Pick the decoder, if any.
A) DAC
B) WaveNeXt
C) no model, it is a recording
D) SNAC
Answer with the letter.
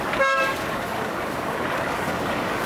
A